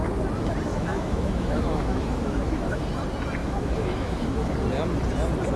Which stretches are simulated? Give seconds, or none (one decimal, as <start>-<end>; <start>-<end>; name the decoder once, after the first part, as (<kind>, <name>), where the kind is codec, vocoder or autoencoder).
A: 0.7-2.8 (autoencoder, DAC-VAE); 3.4-4.5